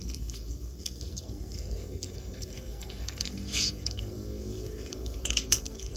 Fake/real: fake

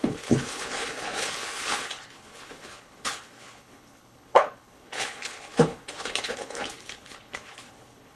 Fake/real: fake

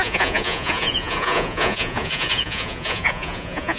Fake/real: fake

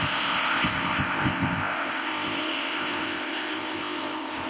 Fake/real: fake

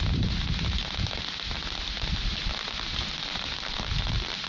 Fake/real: real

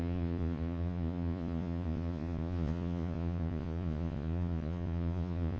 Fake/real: fake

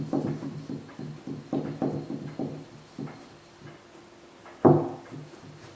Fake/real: real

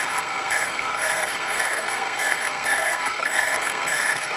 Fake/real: fake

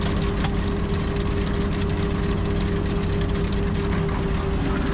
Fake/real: real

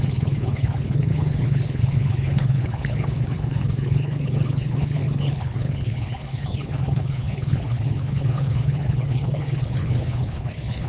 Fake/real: fake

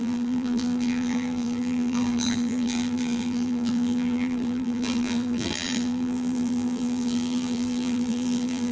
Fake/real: fake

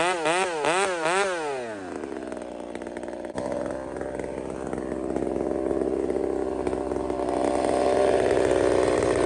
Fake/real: real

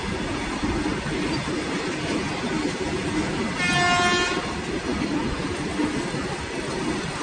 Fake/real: real